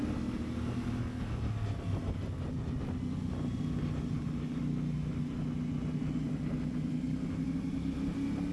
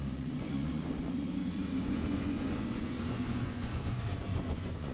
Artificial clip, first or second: second